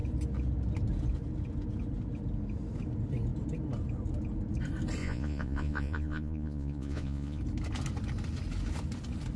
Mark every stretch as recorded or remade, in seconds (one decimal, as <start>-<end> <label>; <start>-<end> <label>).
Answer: 0.0-5.0 recorded; 5.0-7.4 remade; 7.4-9.4 recorded